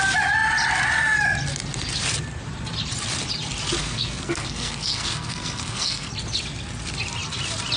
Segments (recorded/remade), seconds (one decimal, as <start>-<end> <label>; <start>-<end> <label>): 0.0-3.8 recorded; 3.8-6.1 remade; 6.1-7.8 recorded